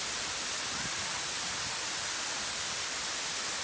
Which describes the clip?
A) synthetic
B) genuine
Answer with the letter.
B